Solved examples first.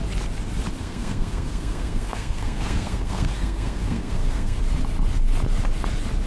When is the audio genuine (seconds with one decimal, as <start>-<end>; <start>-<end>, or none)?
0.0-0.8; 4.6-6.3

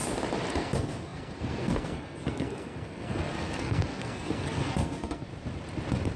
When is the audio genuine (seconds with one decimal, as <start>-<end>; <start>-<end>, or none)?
0.0-0.5; 5.3-6.2

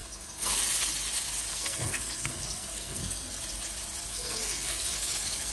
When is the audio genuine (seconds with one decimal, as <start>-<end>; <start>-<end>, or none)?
0.6-1.5; 3.4-4.1

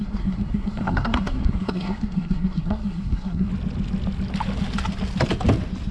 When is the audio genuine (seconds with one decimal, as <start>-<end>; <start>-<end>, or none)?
3.5-5.9